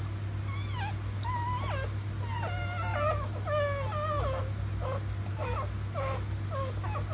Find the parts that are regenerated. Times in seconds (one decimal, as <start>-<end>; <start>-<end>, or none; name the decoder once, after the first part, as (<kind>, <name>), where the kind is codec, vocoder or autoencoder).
none